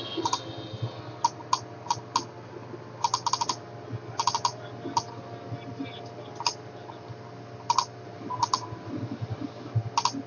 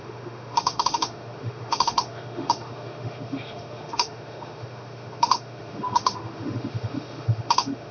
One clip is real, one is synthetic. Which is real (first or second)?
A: first